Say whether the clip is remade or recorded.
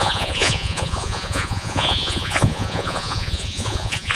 remade